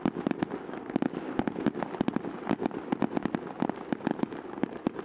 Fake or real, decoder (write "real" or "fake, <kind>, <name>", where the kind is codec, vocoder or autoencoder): real